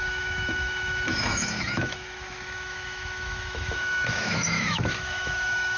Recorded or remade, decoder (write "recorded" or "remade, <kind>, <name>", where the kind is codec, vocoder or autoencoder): remade, autoencoder, DAC-VAE